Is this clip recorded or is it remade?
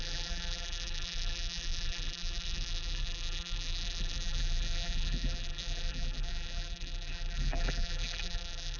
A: remade